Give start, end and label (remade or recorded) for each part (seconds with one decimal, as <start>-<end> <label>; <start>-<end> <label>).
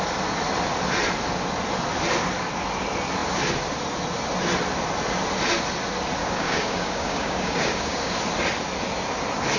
0.0-6.2 recorded; 6.2-8.1 remade; 8.1-9.6 recorded